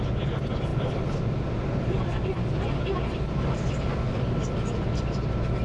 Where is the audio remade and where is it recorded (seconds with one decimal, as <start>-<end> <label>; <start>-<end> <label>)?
0.0-5.6 recorded